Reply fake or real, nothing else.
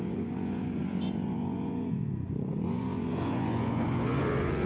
fake